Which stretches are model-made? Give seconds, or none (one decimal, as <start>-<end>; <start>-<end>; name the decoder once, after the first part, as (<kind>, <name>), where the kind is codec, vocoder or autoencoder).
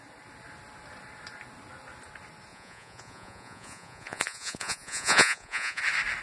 2.5-5.8 (vocoder, Vocos)